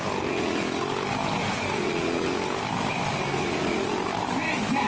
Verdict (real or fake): real